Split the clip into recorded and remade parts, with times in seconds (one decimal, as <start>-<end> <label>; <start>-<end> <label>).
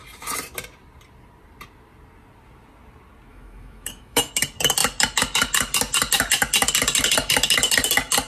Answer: 0.0-3.3 recorded; 3.3-4.3 remade; 4.3-8.3 recorded